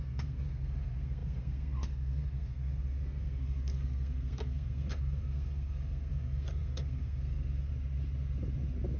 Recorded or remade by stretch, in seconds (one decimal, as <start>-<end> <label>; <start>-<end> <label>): 0.0-7.7 remade; 7.7-9.0 recorded